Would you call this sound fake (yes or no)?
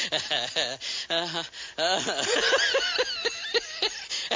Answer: no